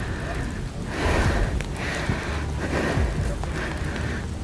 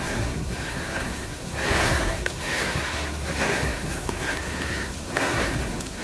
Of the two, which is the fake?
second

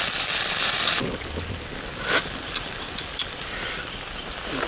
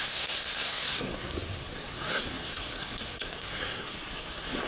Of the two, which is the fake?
second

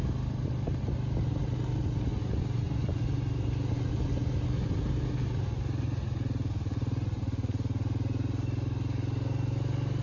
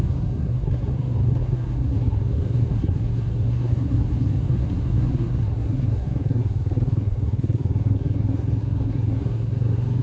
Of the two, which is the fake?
second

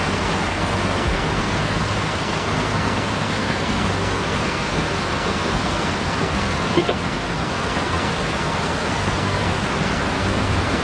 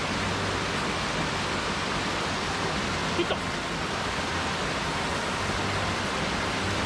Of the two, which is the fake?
first